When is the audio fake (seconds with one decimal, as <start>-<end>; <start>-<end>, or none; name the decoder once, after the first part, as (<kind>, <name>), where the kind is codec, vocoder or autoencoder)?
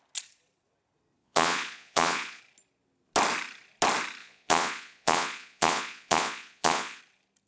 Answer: 1.2-2.4 (vocoder, Vocos); 4.2-7.0